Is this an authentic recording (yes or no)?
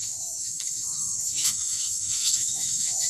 no